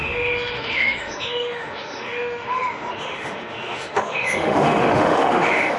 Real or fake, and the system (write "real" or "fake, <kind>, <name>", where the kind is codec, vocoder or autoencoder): fake, autoencoder, DAC-VAE